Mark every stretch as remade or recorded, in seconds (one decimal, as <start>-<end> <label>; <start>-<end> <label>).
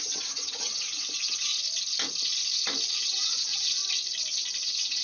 0.0-1.5 remade; 1.5-3.0 recorded; 3.0-3.8 remade; 3.8-4.6 recorded; 4.6-5.0 remade